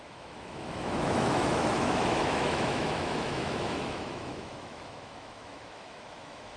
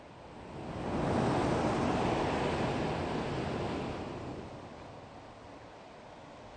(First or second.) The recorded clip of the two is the second